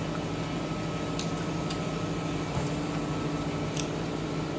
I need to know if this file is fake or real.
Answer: real